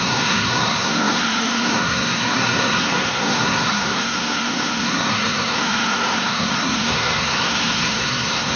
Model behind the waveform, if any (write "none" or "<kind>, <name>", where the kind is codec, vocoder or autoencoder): codec, SNAC